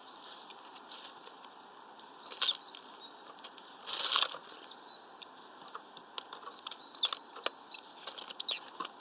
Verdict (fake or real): real